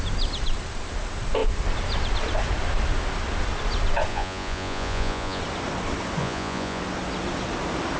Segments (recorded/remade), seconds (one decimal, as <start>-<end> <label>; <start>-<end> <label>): 0.0-4.1 recorded; 4.1-5.4 remade; 5.4-6.2 recorded; 6.2-6.8 remade; 6.8-8.0 recorded